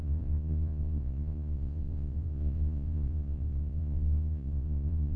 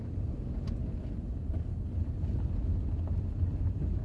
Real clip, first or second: second